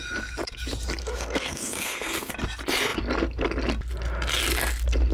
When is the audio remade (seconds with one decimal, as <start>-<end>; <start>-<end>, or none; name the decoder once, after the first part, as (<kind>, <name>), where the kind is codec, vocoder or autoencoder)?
1.0-2.3 (codec, SNAC)

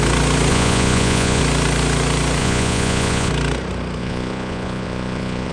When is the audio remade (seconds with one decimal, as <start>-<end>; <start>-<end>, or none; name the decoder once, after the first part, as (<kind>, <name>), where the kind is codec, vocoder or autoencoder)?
0.5-1.4 (vocoder, Vocos); 2.4-3.3; 4.0-5.5

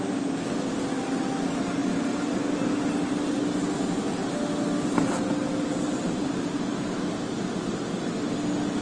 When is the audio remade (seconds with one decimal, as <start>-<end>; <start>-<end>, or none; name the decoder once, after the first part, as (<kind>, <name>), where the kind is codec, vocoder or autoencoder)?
5.7-6.3 (vocoder, BigVGAN v2)

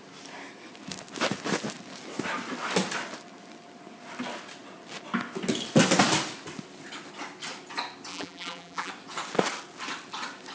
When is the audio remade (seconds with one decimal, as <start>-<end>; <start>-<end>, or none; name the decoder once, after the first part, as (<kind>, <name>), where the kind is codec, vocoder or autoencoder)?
8.1-8.9 (vocoder, BigVGAN v2)

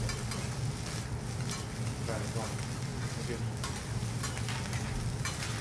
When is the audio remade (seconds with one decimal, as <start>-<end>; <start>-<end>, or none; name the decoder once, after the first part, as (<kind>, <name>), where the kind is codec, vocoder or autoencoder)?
none